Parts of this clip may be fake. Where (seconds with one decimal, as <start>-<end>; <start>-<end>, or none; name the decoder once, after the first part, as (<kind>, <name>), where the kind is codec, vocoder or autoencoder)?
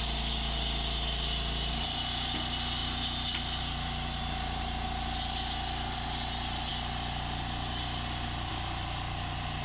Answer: none